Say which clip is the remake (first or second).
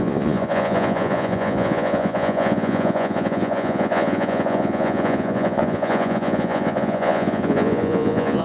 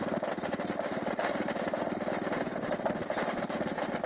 first